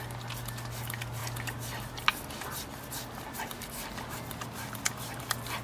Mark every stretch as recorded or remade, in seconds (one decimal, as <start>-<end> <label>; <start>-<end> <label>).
0.0-5.6 recorded